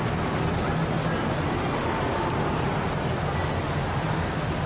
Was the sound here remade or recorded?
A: recorded